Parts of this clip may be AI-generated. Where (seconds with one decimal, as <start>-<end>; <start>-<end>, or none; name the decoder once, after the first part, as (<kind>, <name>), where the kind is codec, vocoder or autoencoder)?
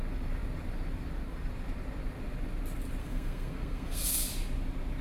3.0-4.2 (codec, SNAC)